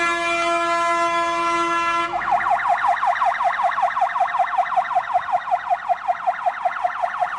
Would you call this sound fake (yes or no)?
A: no